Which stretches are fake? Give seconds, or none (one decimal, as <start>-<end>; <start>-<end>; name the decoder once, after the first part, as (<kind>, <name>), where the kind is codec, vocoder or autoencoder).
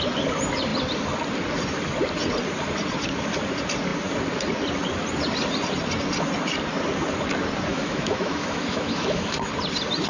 7.7-9.5 (autoencoder, DAC-VAE)